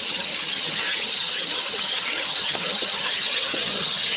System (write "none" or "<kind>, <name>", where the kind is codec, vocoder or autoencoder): vocoder, HiFi-GAN